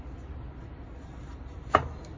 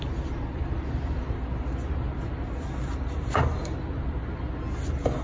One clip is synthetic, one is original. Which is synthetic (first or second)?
first